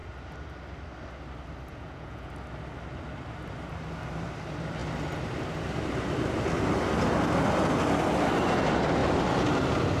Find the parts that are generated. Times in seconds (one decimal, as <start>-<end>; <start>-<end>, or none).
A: 1.7-2.3